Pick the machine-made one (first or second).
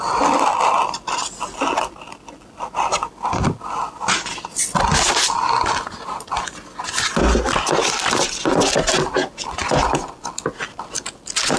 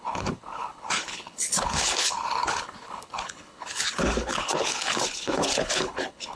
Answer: second